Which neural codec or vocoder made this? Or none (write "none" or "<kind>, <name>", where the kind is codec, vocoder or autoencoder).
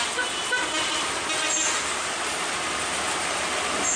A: none